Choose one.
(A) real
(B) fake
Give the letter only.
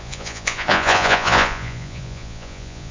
B